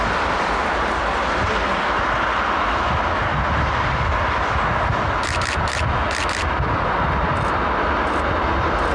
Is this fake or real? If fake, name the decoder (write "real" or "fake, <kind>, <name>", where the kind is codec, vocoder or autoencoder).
real